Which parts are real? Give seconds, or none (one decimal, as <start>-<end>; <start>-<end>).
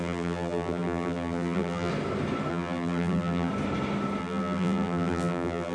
1.9-2.5; 3.5-4.2